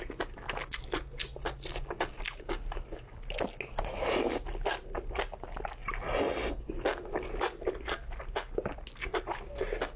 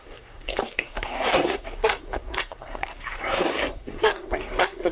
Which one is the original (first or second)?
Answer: first